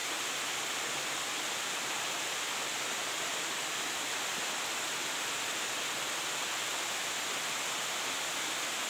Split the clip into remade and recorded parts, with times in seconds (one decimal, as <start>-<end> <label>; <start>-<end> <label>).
0.0-8.9 recorded